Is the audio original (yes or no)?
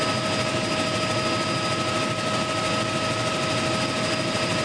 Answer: yes